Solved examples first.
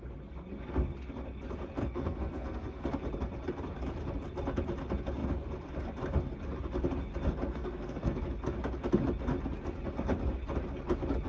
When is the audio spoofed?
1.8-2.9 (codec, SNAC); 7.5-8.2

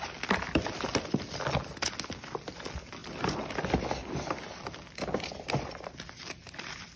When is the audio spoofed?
none